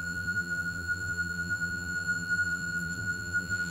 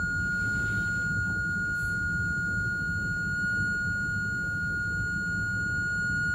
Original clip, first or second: second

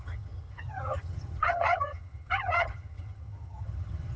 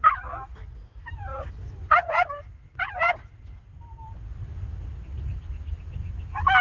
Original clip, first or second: second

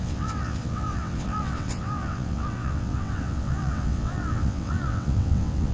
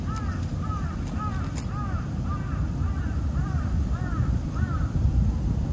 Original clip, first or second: second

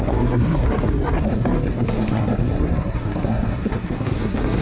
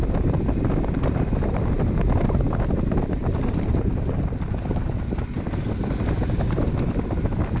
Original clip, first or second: second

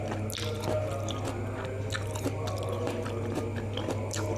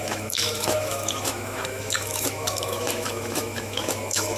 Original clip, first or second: first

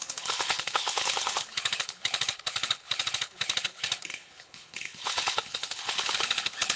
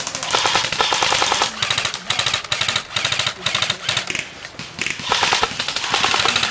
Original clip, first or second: second